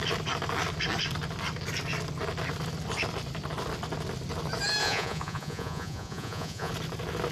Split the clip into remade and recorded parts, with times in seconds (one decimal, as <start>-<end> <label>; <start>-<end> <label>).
0.0-4.8 recorded; 4.8-6.7 remade; 6.7-7.3 recorded